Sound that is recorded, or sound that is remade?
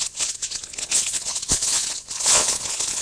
remade